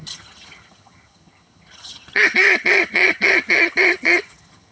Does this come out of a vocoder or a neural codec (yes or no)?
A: yes